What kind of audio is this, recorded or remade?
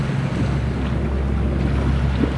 recorded